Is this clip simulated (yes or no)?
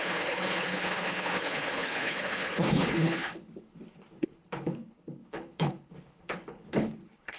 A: yes